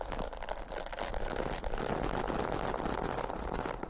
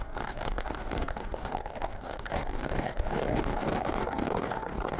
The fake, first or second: second